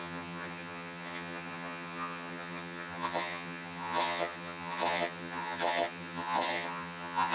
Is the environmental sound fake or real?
fake